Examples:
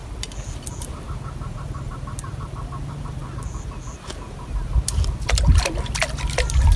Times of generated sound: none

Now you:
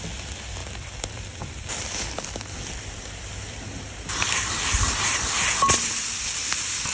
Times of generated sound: 0.6-4.5 (vocoder, BigVGAN v2)

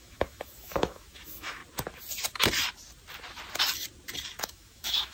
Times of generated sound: 0.0-1.6 (autoencoder, DAC-VAE); 4.4-5.1

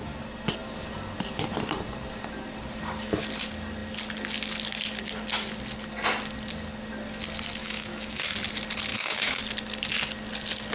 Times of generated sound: 7.6-8.3 (autoencoder, DAC-VAE); 8.9-9.4

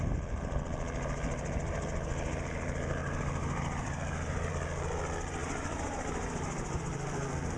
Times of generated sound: 3.0-4.5 (vocoder, BigVGAN v2); 5.4-6.8

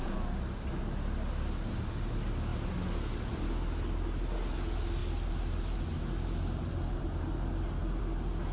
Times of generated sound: none